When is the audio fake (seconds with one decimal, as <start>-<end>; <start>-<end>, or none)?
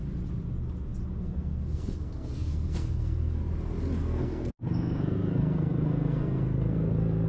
1.2-3.4; 4.0-7.3